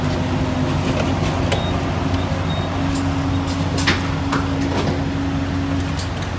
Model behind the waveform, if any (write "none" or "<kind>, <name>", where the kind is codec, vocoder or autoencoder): none